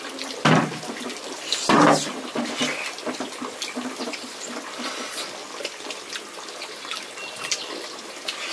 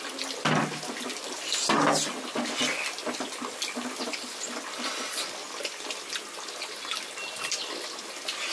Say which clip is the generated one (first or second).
first